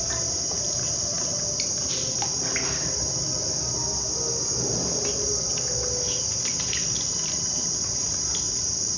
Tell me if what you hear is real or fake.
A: real